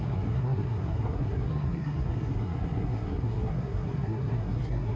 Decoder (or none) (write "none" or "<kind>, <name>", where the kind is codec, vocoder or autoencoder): codec, SNAC